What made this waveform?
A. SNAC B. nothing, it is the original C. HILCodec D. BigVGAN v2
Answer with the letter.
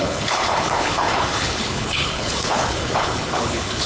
C